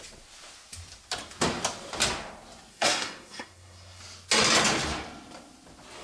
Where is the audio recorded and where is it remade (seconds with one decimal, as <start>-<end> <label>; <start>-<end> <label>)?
0.0-2.7 recorded; 2.7-4.0 remade; 4.0-6.0 recorded